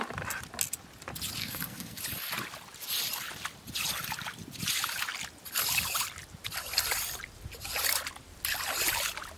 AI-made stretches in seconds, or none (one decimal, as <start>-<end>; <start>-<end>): 1.4-2.0